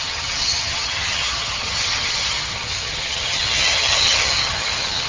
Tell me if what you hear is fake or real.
fake